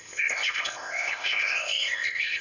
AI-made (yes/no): yes